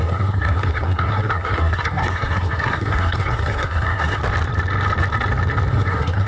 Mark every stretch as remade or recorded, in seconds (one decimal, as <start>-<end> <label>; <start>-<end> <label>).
0.0-4.2 remade; 4.2-5.7 recorded; 5.7-6.3 remade

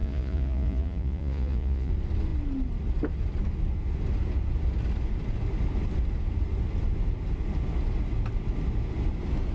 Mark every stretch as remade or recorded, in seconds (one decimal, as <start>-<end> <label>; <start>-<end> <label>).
0.0-1.9 remade; 1.9-9.5 recorded

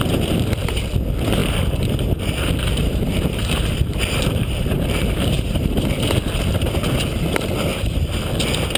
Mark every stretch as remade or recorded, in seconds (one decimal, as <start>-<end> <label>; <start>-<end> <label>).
0.0-2.7 recorded; 2.7-6.2 remade; 6.2-7.7 recorded; 7.7-8.3 remade; 8.3-8.8 recorded

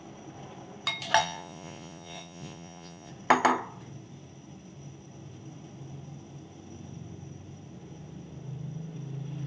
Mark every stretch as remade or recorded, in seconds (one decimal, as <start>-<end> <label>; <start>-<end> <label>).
0.0-1.2 recorded; 1.2-3.1 remade; 3.1-9.5 recorded

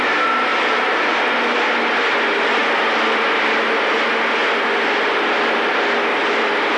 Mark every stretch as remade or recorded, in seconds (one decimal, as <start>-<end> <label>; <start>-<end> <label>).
0.0-0.5 recorded; 0.5-1.2 remade; 1.2-6.8 recorded